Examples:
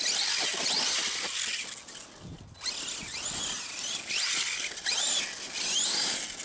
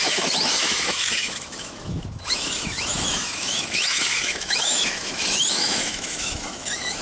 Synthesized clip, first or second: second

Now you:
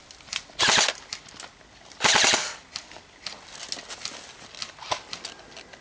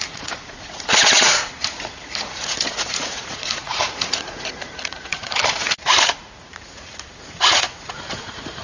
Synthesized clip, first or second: second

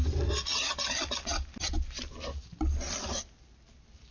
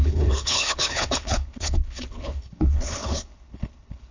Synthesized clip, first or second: second